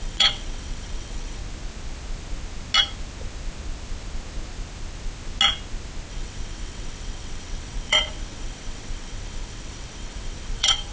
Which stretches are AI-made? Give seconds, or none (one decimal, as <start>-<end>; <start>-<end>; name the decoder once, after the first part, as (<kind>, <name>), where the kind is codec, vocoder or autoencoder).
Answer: 0.0-1.4 (vocoder, WaveNeXt); 6.1-10.9